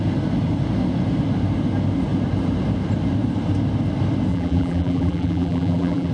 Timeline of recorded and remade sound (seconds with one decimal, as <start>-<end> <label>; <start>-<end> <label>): 0.0-4.3 recorded; 4.3-6.1 remade